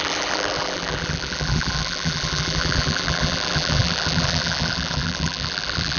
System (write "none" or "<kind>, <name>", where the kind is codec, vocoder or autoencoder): vocoder, BigVGAN v2